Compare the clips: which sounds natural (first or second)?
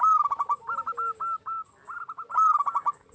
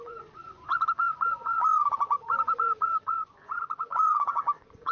first